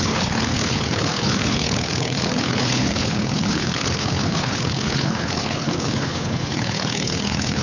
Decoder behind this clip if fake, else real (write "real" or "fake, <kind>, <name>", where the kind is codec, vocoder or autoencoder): fake, codec, HILCodec